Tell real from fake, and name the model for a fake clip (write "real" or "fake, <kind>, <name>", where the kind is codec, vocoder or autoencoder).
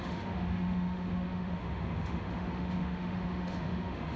fake, autoencoder, DAC-VAE